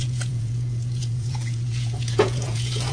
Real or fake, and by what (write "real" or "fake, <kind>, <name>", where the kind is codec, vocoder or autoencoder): fake, vocoder, Vocos